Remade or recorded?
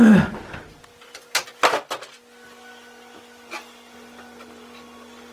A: recorded